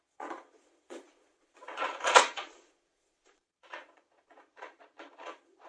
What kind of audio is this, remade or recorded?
remade